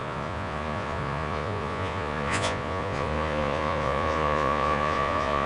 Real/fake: fake